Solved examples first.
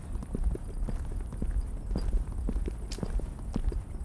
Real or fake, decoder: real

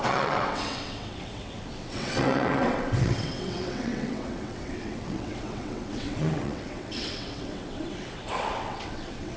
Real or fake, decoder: fake, vocoder, WaveNeXt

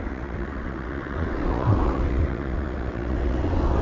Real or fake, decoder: fake, vocoder, WaveNeXt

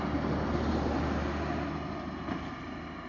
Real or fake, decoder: real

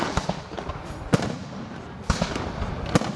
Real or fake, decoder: real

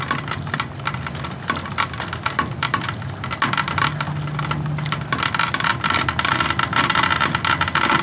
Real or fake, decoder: real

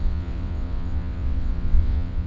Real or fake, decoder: fake, vocoder, WaveNeXt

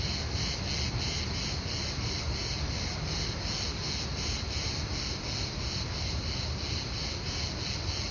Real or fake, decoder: real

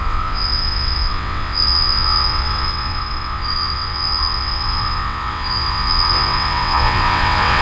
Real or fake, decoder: fake, vocoder, WaveNeXt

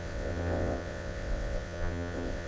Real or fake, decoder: fake, vocoder, WaveNeXt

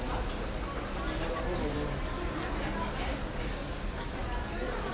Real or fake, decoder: real